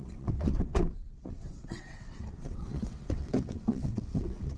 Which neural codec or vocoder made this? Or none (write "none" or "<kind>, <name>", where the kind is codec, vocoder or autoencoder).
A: vocoder, WaveNeXt